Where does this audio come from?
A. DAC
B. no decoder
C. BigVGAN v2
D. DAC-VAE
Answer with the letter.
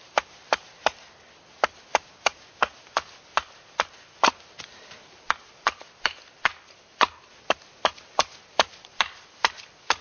B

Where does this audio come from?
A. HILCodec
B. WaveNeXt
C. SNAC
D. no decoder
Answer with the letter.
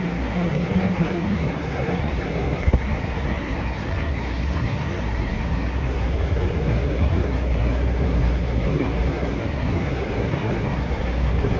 C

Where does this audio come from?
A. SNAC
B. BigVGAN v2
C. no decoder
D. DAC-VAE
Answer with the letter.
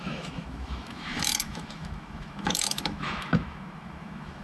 D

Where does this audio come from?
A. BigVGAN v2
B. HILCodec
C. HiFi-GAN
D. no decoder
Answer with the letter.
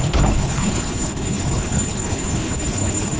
B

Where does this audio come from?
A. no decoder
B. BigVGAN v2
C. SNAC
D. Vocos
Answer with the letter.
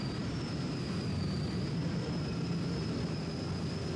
A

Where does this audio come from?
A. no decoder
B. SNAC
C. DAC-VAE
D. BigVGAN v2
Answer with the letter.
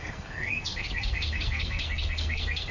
B